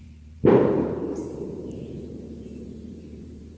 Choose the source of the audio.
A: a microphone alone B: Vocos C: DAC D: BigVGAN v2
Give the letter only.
D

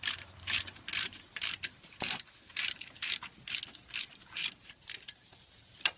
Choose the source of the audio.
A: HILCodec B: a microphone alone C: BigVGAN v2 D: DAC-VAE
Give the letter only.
C